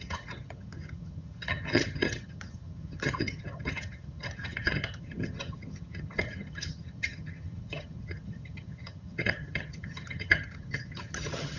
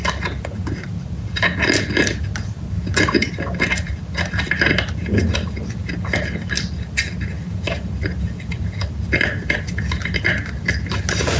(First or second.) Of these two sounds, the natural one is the second